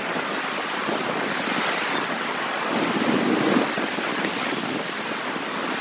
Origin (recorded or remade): recorded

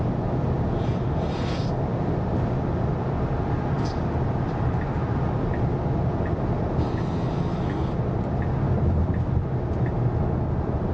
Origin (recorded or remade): recorded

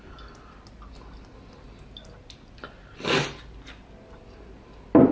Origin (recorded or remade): recorded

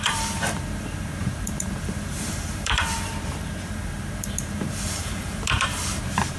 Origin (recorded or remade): remade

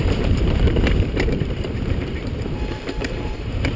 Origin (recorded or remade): remade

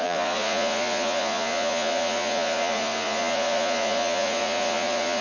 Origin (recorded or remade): remade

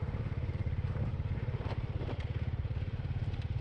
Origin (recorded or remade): remade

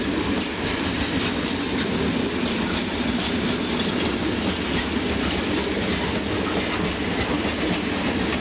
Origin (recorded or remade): recorded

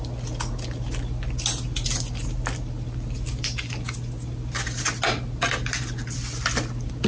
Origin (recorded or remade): recorded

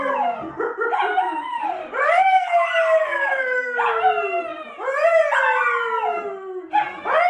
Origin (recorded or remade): recorded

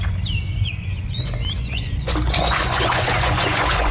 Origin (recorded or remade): remade